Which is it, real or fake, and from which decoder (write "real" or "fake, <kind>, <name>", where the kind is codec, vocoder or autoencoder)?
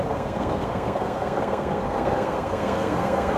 fake, codec, SNAC